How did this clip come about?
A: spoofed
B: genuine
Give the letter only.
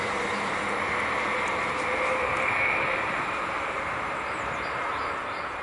A